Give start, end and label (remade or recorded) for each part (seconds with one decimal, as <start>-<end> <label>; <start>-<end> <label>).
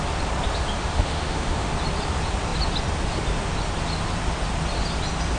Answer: 0.0-0.8 recorded; 0.8-1.7 remade; 1.7-5.4 recorded